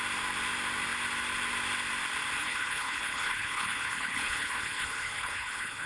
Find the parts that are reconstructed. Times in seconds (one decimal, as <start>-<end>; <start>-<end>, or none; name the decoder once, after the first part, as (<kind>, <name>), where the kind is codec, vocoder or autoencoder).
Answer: 2.4-5.9 (codec, HILCodec)